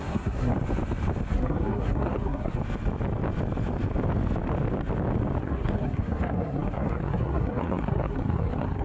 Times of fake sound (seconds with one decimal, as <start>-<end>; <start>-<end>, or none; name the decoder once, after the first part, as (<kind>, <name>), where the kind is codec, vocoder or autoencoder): 0.0-0.5 (codec, SNAC); 1.3-2.6; 5.4-8.8